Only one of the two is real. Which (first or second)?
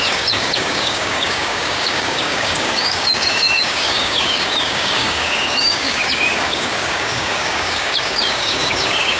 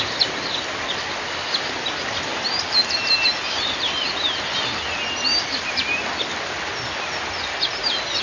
second